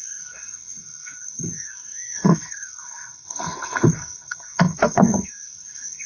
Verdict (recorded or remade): remade